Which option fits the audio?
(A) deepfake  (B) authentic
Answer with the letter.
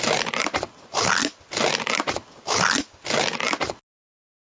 B